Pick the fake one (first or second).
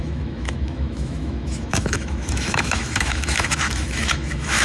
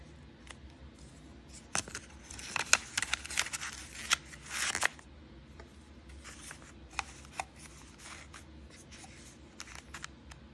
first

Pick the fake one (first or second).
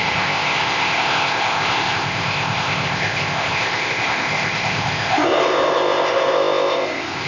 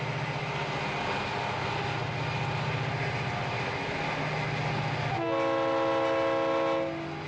first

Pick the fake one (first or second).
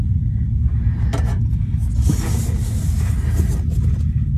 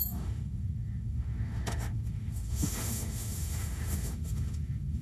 second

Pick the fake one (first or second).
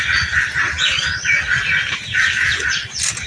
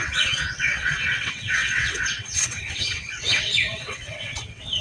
second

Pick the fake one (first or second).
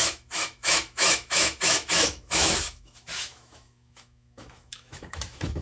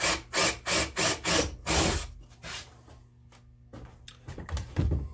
first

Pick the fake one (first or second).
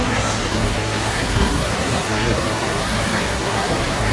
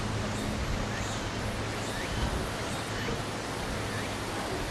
first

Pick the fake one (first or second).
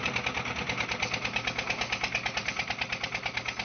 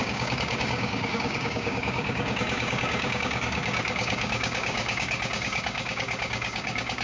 second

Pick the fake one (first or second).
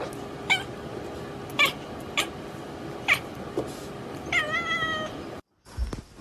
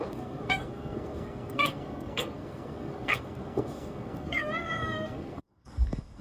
second